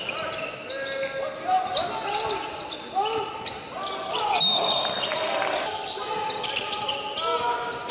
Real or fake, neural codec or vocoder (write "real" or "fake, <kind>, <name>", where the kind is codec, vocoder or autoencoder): real